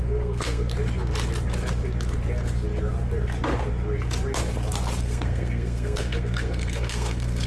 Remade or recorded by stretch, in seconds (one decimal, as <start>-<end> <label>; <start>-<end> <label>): 0.0-0.7 remade; 0.7-5.0 recorded; 5.0-7.5 remade